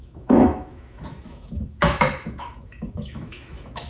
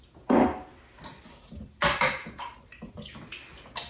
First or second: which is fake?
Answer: first